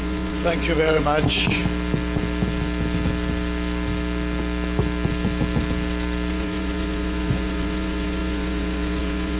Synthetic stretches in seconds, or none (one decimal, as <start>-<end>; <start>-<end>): 0.0-1.6; 6.3-9.4